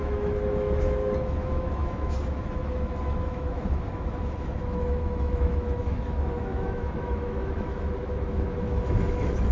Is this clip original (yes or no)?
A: no